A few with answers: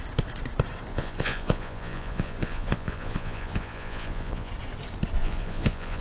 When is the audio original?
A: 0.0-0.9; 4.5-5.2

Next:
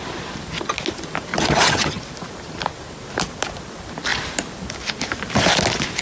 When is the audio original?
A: 0.0-1.3; 2.0-6.0

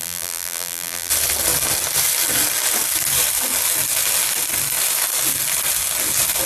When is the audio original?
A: 1.1-6.5

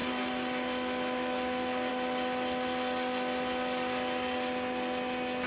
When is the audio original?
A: 0.0-5.5

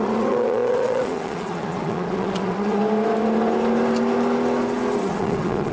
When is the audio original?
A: 2.8-5.0

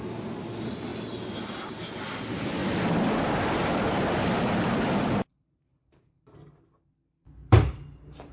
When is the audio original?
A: 0.0-2.6; 5.7-7.4